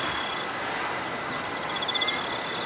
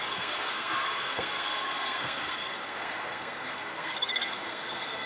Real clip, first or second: first